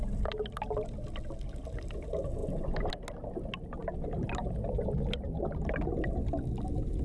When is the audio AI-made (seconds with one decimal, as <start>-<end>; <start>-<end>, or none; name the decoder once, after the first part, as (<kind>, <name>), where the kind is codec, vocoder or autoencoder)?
none